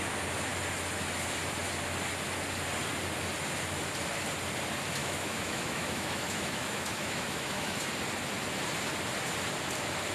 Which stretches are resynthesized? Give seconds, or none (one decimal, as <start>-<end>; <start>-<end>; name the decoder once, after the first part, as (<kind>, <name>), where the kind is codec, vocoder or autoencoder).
5.0-7.9 (autoencoder, DAC-VAE)